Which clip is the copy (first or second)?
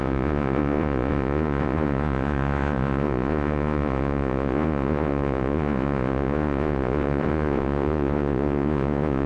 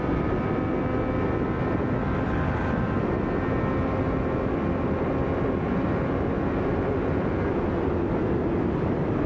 first